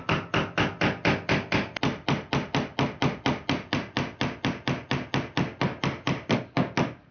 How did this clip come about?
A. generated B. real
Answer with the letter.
B